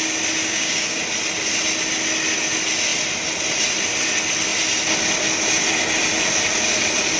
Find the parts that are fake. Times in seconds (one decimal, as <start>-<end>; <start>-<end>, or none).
0.4-1.0